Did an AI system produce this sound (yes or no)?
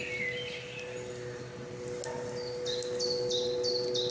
no